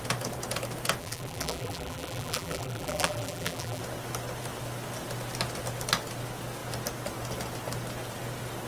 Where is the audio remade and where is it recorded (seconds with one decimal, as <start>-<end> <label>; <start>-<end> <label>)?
0.0-1.0 recorded; 1.0-3.8 remade; 3.8-8.7 recorded